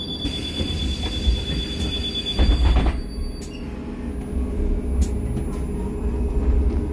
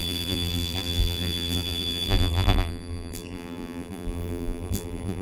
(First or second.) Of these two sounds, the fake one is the second